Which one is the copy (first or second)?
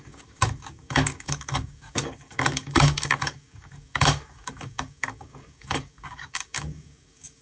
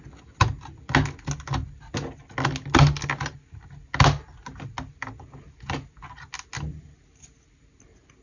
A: first